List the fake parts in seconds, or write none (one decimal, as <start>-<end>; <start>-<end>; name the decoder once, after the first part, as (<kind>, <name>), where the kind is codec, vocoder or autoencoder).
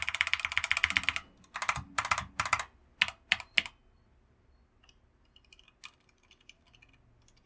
none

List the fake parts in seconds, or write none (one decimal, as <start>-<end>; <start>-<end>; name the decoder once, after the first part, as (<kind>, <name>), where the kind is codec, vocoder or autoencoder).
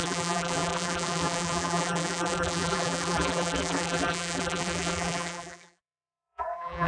0.0-6.9 (vocoder, BigVGAN v2)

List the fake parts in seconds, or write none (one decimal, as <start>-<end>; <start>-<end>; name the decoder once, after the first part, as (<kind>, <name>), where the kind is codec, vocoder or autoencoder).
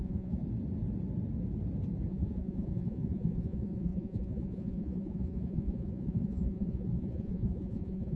0.0-0.4 (vocoder, Vocos); 2.1-8.2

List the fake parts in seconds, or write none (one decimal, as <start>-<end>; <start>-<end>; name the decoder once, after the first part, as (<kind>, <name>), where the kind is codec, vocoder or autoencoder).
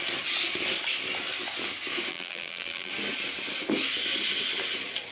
2.1-2.9 (vocoder, BigVGAN v2)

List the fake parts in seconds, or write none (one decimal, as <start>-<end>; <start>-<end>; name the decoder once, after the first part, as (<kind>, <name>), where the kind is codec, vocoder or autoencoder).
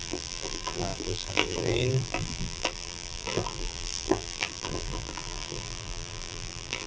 0.0-6.9 (vocoder, BigVGAN v2)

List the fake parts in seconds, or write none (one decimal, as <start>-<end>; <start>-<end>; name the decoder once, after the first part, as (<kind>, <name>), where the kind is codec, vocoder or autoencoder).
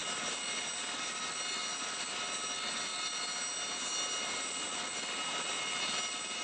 none